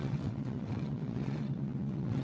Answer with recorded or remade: remade